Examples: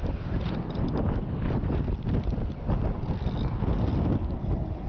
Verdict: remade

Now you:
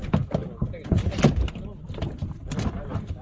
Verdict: recorded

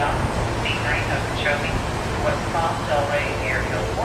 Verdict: recorded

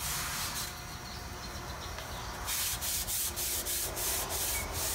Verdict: recorded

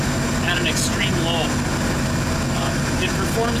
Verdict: recorded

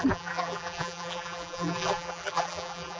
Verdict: remade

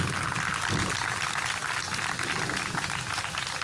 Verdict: recorded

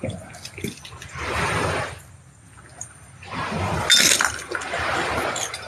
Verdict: recorded